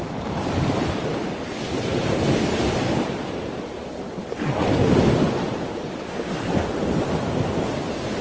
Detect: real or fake real